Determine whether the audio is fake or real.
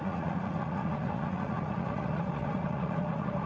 fake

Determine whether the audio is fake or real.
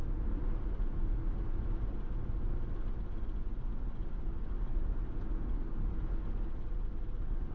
real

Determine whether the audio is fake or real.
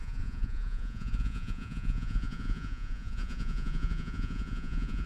fake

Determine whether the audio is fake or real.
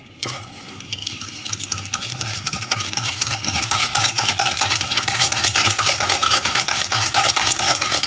fake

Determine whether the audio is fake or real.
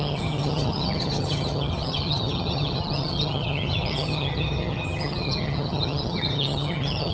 fake